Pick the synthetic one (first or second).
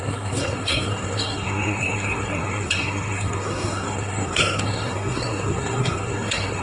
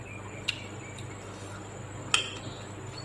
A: first